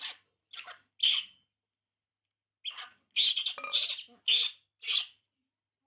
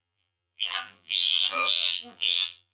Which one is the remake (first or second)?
second